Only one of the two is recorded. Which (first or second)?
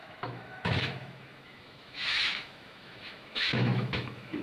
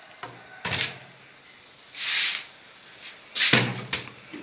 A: second